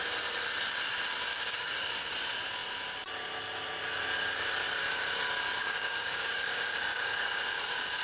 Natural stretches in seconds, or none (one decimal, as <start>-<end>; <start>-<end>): 0.0-1.3; 2.1-5.6